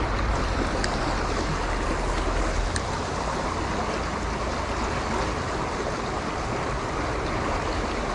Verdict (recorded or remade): recorded